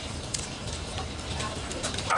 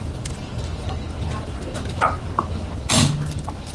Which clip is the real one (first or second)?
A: second